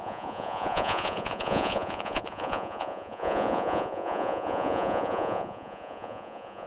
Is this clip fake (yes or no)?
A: yes